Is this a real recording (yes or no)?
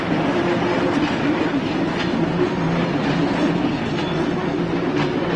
yes